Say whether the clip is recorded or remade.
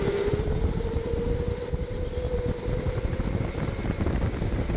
recorded